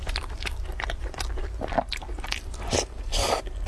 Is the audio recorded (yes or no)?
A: no